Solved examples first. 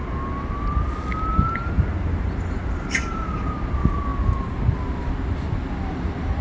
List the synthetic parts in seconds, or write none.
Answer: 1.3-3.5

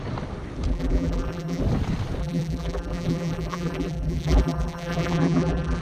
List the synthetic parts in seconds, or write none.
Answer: 0.7-1.6; 2.2-5.8

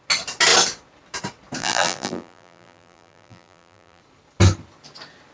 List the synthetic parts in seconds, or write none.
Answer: 1.6-4.0

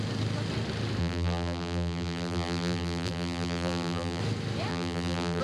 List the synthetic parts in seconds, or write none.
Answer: 1.0-4.2; 4.7-5.4

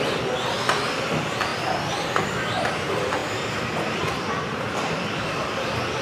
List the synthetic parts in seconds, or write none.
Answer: 3.2-6.0